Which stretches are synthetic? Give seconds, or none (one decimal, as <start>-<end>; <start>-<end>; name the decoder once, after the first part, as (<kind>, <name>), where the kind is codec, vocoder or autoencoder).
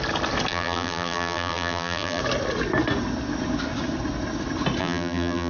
0.5-2.2 (vocoder, BigVGAN v2); 4.8-5.5